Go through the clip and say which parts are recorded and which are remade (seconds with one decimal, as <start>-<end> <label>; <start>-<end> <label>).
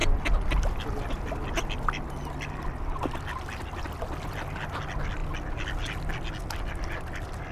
0.0-7.5 recorded